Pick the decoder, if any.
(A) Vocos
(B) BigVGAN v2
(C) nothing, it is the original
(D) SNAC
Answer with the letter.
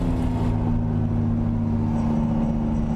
C